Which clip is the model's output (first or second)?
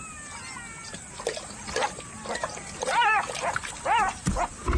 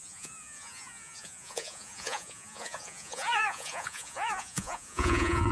second